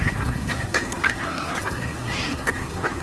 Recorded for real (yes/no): no